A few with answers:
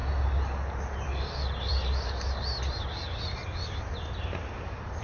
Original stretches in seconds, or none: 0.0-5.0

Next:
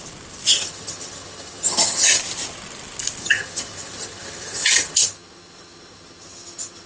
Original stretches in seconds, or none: 0.0-0.5; 2.2-3.2

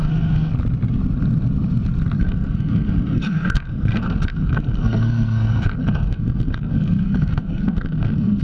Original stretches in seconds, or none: 0.5-2.2